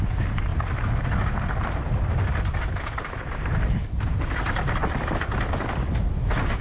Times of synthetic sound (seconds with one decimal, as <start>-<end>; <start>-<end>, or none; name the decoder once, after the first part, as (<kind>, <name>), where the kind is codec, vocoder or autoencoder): 0.0-0.5 (vocoder, BigVGAN v2); 3.3-4.8